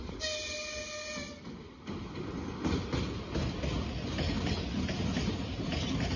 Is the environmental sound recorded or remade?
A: recorded